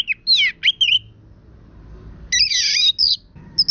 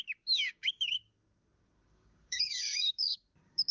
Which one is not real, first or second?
second